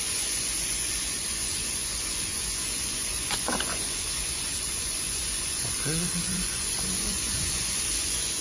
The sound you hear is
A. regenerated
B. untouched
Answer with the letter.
A